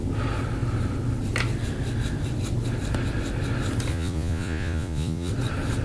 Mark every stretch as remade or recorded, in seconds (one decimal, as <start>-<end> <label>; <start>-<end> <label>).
0.0-3.9 recorded; 3.9-5.3 remade; 5.3-5.8 recorded